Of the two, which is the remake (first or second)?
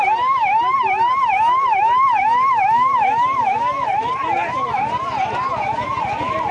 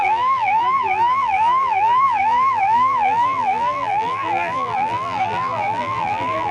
second